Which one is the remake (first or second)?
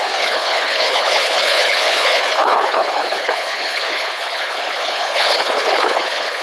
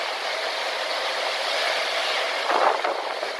first